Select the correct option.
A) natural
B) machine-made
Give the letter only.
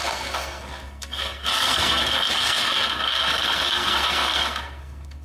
B